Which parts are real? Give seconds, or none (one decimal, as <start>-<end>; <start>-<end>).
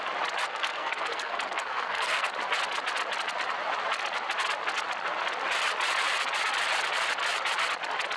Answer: 0.0-0.4; 2.3-8.2